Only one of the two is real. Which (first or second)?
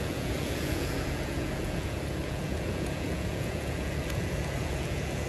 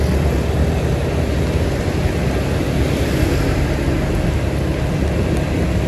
second